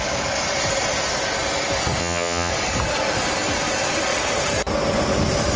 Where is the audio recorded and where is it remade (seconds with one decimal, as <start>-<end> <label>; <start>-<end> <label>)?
0.0-2.0 recorded; 2.0-2.5 remade; 2.5-5.6 recorded